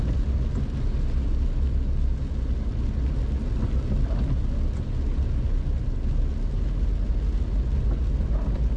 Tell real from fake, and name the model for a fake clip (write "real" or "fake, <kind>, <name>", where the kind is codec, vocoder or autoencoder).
real